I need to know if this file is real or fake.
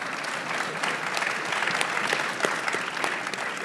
real